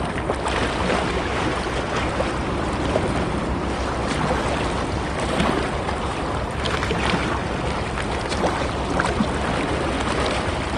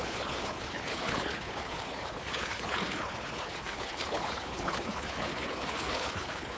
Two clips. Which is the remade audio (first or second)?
second